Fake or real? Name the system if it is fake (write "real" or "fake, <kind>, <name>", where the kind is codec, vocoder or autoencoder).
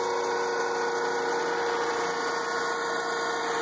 real